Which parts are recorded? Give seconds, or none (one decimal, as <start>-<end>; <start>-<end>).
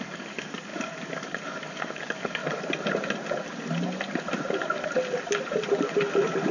2.4-6.5